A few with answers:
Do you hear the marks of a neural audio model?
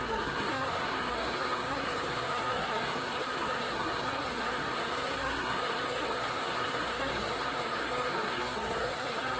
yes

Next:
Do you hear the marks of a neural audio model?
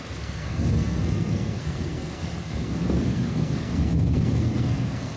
yes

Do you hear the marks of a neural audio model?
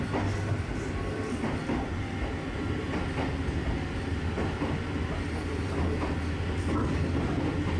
no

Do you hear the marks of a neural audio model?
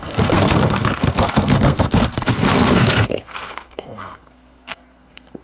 yes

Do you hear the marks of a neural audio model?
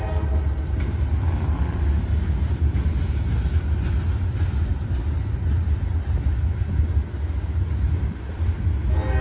no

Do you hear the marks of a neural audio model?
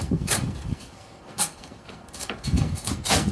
yes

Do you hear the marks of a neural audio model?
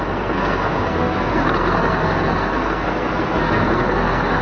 yes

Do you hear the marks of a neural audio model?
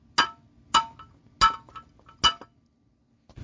no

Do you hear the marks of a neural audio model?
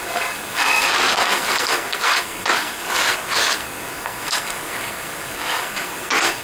yes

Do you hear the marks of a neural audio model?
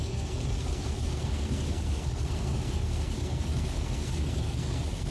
yes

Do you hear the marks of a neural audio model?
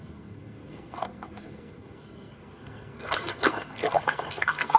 yes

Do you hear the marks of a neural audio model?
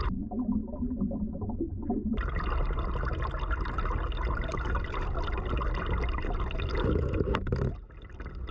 no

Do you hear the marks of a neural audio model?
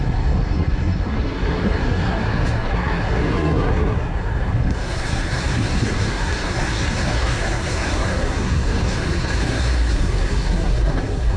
yes